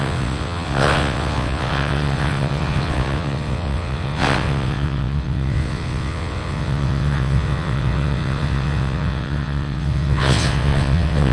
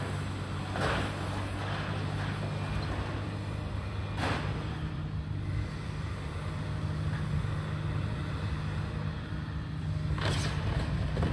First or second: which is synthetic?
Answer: first